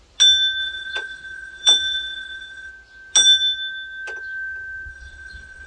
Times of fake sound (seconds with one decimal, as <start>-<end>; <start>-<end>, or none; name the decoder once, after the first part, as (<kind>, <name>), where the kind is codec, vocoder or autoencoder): 0.6-2.7 (vocoder, WaveNeXt); 4.9-5.7